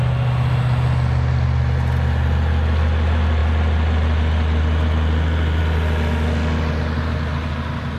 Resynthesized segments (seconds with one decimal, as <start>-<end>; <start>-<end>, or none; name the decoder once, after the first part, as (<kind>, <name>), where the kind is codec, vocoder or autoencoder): none